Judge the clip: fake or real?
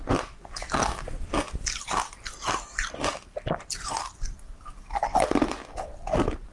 real